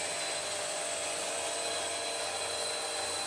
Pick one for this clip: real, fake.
fake